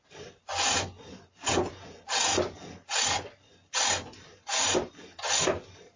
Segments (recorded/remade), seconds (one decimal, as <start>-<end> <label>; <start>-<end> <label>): 0.0-6.0 recorded